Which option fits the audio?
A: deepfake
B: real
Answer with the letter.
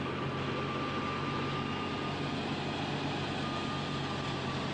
B